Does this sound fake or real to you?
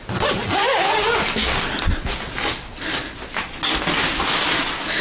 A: real